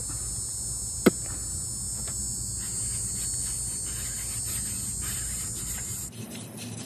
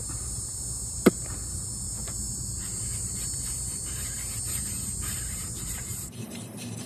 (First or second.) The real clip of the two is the first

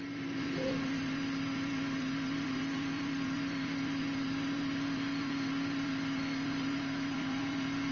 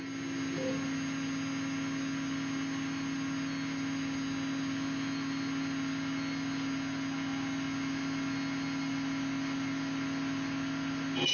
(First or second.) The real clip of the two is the second